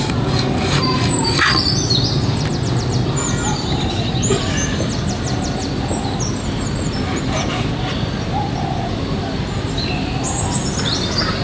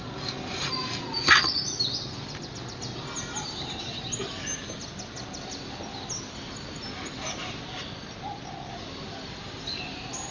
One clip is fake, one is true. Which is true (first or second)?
second